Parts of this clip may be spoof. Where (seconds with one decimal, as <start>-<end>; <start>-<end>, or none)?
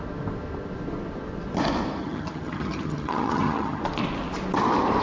2.0-3.8